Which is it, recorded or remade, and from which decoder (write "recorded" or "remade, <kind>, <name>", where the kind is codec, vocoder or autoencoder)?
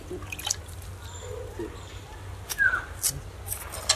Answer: recorded